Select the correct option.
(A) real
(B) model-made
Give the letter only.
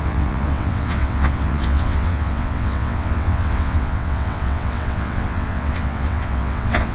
B